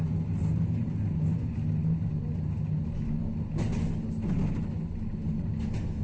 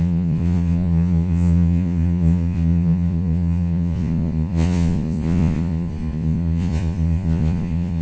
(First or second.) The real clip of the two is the first